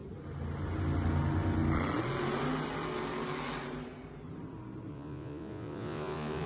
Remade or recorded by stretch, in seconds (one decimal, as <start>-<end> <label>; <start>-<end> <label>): 0.0-4.9 recorded; 4.9-6.5 remade